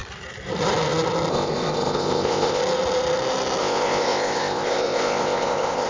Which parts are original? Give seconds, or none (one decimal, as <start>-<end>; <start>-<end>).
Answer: 0.0-1.3; 2.6-3.6